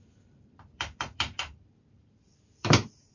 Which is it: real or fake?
fake